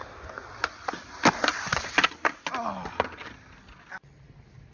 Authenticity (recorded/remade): recorded